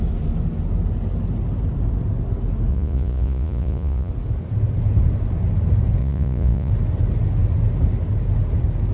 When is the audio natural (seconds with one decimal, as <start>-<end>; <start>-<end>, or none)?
0.0-2.7; 4.1-6.0; 6.7-8.9